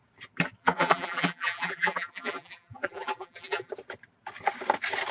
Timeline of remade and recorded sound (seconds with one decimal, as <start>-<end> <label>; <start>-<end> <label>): 0.0-0.6 recorded; 0.6-3.7 remade; 3.7-5.1 recorded